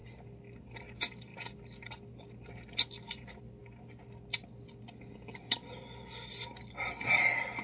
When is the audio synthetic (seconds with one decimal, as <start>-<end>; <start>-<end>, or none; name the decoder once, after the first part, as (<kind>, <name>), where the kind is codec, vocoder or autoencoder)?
0.8-1.3 (vocoder, BigVGAN v2); 2.9-3.6